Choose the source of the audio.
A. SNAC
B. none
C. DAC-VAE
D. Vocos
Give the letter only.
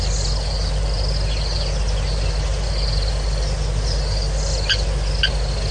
B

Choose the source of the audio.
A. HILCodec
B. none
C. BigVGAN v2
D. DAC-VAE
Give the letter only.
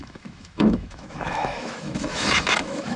D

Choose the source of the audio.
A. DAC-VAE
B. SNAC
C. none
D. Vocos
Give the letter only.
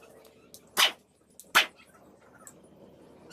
C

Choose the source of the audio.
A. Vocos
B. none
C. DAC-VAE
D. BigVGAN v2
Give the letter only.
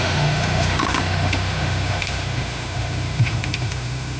C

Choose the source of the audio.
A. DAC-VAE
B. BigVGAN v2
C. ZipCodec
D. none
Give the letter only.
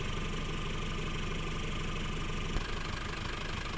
D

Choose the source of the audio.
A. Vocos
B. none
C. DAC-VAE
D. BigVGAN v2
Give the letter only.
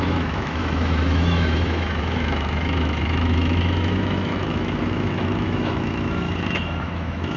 C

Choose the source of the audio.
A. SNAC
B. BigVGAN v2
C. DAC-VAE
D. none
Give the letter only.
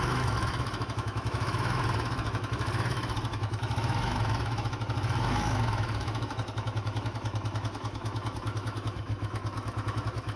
C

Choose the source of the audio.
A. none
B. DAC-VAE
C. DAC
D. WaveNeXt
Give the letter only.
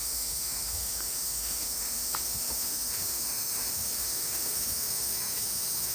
B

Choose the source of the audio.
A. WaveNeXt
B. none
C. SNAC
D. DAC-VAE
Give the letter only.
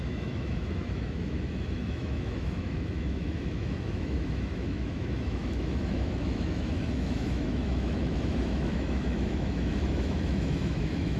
D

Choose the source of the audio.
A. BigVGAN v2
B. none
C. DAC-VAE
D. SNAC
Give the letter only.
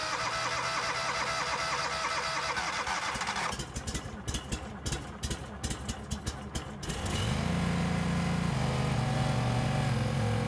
B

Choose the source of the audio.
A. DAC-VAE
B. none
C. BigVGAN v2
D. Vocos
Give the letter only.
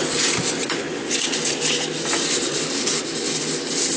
B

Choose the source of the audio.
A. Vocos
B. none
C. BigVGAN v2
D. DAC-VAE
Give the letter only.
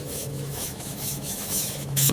D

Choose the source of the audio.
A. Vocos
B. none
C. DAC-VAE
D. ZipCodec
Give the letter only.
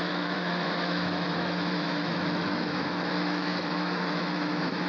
C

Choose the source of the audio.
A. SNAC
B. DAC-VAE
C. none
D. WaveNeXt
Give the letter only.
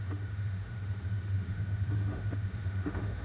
B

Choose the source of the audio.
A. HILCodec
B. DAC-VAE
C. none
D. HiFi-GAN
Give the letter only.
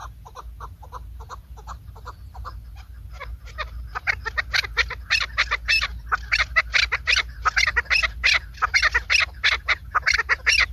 C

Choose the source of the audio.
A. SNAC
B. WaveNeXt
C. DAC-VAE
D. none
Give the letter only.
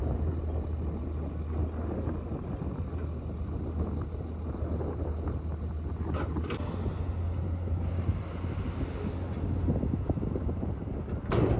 D